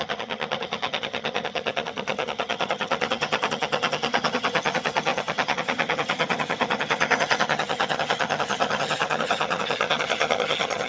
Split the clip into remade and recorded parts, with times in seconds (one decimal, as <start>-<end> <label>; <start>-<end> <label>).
0.0-10.9 remade